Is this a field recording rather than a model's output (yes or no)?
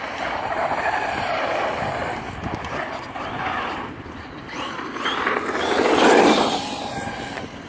yes